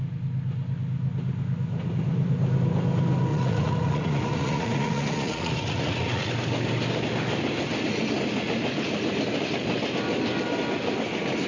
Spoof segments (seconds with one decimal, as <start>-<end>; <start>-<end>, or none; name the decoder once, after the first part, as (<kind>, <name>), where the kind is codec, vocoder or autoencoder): 3.3-6.3 (vocoder, Vocos)